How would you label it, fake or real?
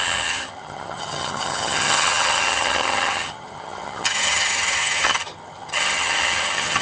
fake